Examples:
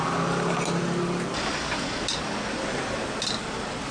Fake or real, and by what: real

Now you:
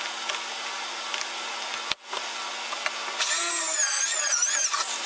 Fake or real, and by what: real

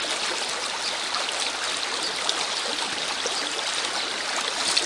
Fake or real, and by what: real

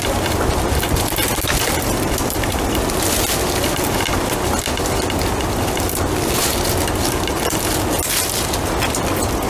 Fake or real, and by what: real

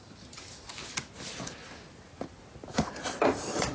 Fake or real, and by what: real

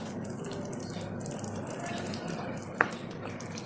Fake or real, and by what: real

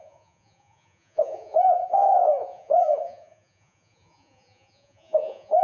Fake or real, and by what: fake, vocoder, Vocos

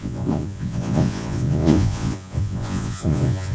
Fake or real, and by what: fake, vocoder, Vocos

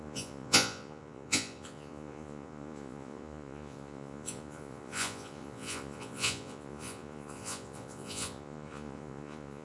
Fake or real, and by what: fake, vocoder, Vocos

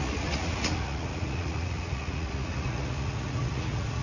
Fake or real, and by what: fake, vocoder, Vocos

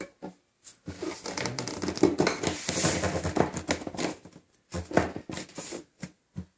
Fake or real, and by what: real